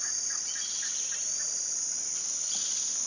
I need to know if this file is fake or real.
real